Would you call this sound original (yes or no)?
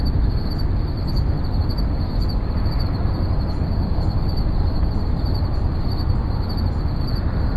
yes